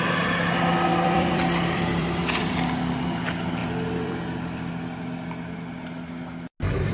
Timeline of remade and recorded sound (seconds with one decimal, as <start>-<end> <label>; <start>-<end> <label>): 0.0-0.9 recorded; 0.9-2.2 remade; 2.2-3.6 recorded; 3.6-4.7 remade; 4.7-6.9 recorded